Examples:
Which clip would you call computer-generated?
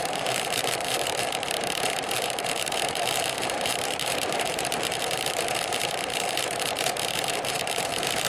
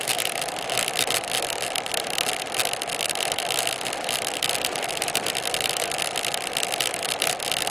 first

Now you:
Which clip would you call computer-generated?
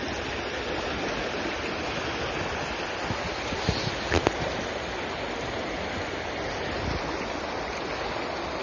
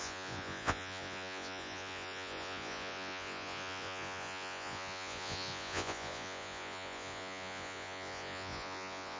second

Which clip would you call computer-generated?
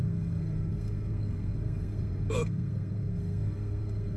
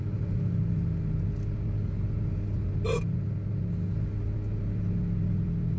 first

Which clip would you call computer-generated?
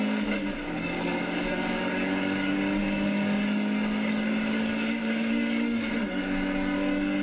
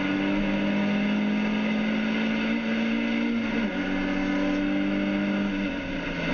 first